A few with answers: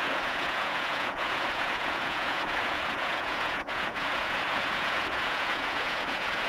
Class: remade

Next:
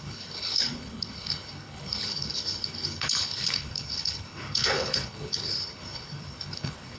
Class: remade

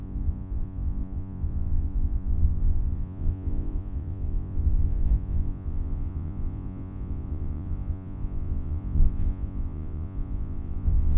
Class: remade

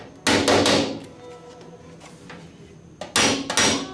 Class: recorded